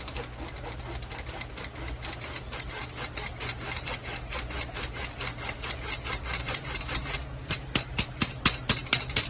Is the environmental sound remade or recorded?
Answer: recorded